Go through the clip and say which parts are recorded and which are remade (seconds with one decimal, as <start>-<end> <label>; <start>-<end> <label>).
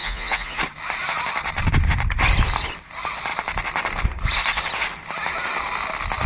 0.0-0.6 remade; 0.6-6.3 recorded